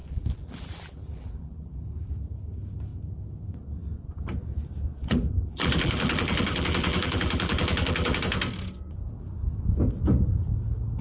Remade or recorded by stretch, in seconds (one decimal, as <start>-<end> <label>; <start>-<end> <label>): 0.0-2.1 remade; 2.1-5.0 recorded; 5.0-8.2 remade; 8.2-11.0 recorded